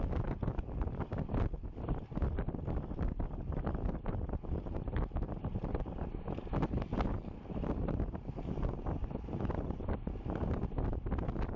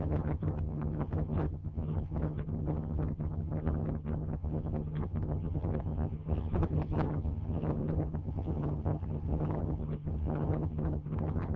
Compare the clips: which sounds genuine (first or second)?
first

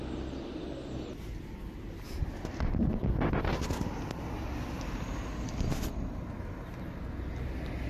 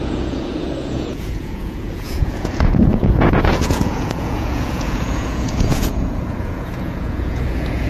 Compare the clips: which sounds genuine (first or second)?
first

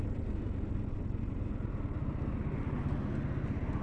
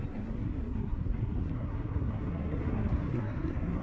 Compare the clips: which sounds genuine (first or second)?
first